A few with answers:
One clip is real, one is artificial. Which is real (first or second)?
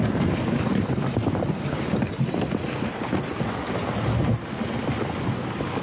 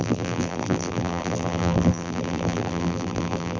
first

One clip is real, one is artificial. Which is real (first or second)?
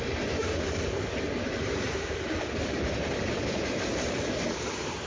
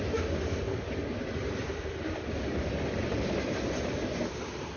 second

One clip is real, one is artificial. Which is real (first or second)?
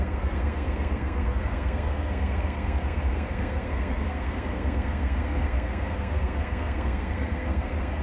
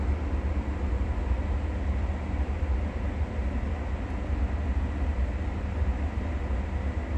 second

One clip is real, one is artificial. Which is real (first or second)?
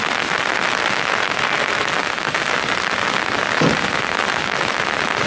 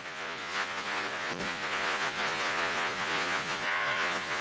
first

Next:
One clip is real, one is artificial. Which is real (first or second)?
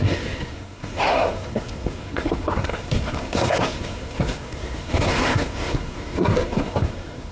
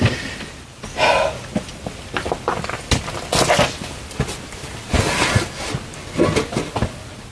second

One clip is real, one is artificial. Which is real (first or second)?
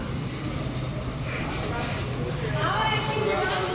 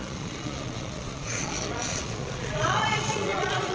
first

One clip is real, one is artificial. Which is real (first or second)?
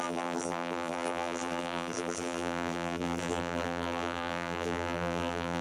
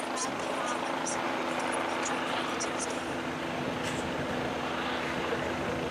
second